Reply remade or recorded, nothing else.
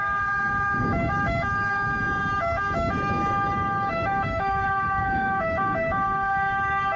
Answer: remade